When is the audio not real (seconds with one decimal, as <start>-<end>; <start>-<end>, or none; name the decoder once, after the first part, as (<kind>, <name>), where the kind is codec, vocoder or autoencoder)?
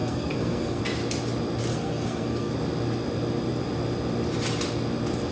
0.0-0.8 (codec, SNAC); 1.7-2.5